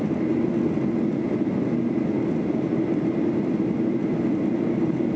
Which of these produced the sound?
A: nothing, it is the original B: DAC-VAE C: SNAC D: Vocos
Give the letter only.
A